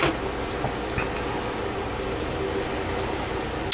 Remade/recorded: recorded